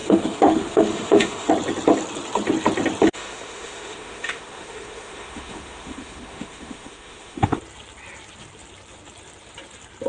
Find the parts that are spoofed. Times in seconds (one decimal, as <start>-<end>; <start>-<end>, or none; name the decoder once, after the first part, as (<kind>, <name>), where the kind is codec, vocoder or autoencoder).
0.0-1.5 (autoencoder, DAC-VAE); 3.1-7.6